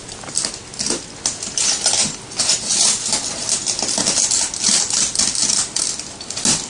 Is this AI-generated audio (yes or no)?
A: no